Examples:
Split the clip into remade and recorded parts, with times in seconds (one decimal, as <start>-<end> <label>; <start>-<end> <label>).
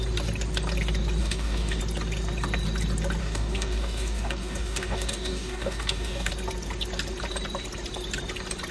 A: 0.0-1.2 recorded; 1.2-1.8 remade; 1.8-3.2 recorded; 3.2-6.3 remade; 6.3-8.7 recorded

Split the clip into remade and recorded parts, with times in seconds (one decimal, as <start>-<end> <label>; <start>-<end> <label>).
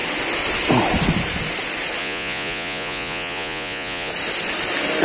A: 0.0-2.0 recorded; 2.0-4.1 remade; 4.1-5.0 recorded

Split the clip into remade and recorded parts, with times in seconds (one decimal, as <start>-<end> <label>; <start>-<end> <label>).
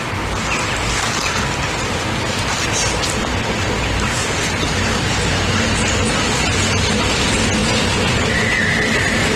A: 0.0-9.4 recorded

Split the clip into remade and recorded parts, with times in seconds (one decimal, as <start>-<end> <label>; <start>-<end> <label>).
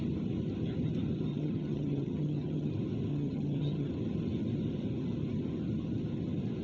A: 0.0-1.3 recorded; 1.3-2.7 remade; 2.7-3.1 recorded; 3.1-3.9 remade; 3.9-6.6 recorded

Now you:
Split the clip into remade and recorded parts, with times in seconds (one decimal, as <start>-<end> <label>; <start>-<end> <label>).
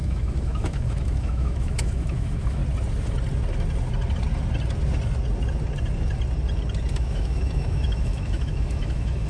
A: 0.0-2.6 remade; 2.6-6.9 recorded; 6.9-9.3 remade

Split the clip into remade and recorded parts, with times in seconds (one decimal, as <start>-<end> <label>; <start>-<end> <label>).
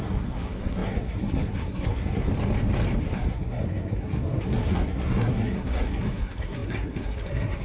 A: 0.0-2.3 remade; 2.3-3.0 recorded; 3.0-7.6 remade